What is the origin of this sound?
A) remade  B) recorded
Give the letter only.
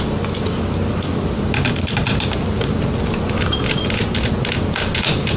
B